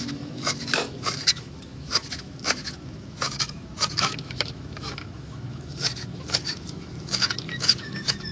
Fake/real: fake